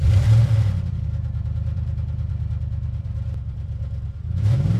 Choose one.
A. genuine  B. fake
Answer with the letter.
B